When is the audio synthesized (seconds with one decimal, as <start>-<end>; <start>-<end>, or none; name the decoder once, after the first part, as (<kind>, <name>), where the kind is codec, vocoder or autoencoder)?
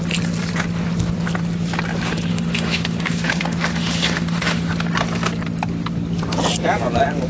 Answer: 2.3-4.7 (autoencoder, DAC-VAE)